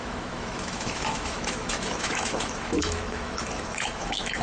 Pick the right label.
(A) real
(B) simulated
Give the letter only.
B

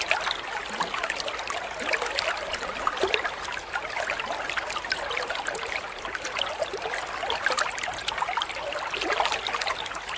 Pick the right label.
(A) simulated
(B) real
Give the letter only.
B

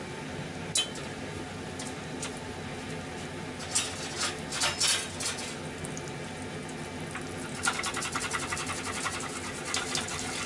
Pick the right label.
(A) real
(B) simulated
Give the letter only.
A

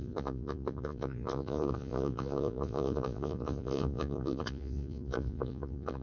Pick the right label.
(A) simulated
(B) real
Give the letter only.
A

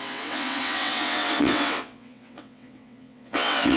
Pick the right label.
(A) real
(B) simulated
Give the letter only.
B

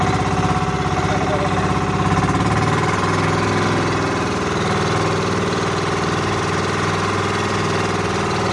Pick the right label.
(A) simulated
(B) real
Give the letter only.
B